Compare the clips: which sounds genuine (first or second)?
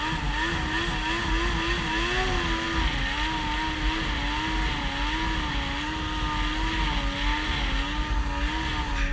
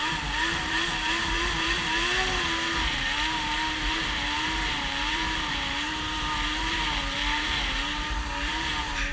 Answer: first